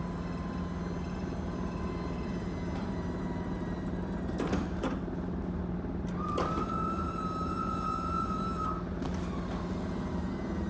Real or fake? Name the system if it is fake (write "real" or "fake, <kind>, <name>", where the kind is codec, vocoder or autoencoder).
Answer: real